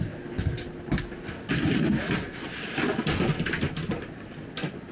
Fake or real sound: real